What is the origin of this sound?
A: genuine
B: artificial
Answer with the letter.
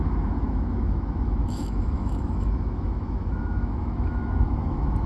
B